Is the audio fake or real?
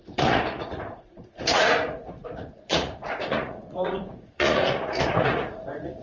fake